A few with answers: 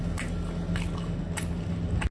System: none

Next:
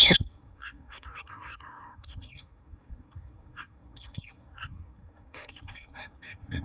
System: codec, SNAC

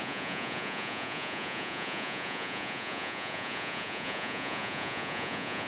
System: vocoder, Vocos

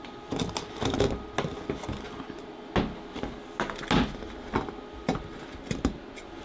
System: none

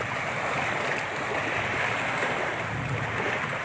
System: none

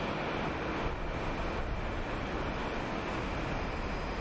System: none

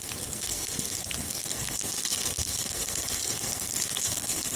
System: codec, SNAC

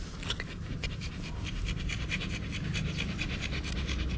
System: none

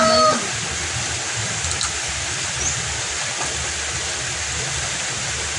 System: none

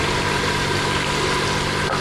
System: none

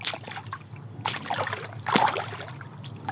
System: none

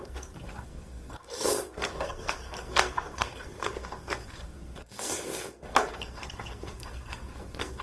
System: codec, SNAC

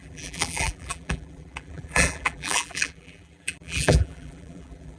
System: vocoder, BigVGAN v2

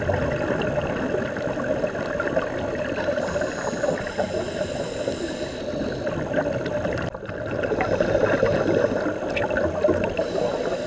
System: none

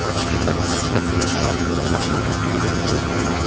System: vocoder, HiFi-GAN